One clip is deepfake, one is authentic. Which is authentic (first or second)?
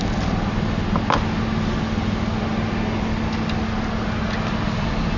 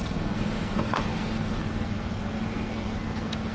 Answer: first